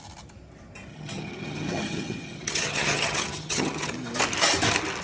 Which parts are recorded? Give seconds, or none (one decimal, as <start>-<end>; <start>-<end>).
0.0-0.9; 3.9-5.0